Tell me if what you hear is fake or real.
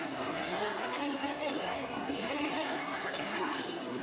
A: fake